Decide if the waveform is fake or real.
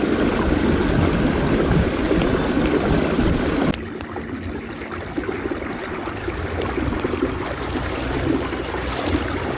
real